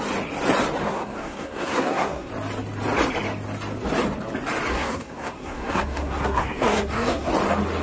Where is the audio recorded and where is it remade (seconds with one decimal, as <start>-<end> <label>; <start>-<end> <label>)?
0.0-0.8 recorded; 0.8-2.3 remade; 2.3-4.7 recorded; 4.7-7.3 remade; 7.3-7.8 recorded